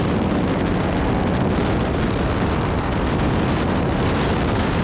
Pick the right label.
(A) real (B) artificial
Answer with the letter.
A